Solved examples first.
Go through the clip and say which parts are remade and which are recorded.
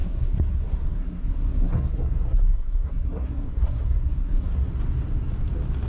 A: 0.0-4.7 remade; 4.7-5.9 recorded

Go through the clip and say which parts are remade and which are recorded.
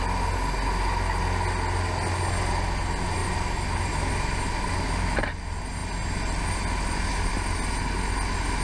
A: 0.0-8.6 recorded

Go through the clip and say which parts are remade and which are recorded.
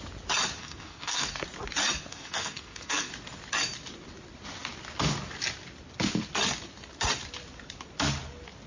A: 0.0-0.6 recorded; 0.6-1.3 remade; 1.3-2.1 recorded; 2.1-3.1 remade; 3.1-8.7 recorded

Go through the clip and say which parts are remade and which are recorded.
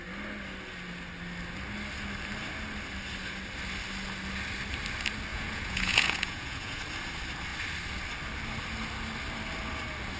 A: 0.0-5.3 recorded; 5.3-6.8 remade; 6.8-10.2 recorded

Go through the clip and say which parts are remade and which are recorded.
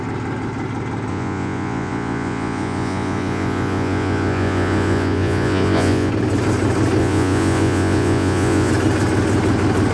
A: 0.0-1.1 recorded; 1.1-6.1 remade; 6.1-7.0 recorded; 7.0-8.7 remade; 8.7-9.9 recorded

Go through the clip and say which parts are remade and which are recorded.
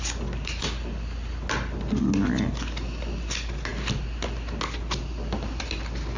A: 0.0-6.2 recorded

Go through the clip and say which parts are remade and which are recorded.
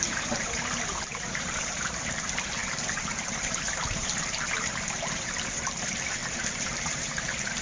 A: 0.0-7.6 remade